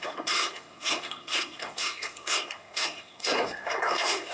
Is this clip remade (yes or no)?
yes